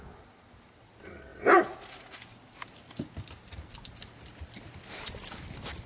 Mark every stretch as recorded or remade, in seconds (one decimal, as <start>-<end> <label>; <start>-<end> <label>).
0.0-5.9 recorded